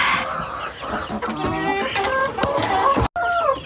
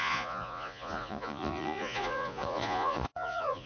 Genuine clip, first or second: first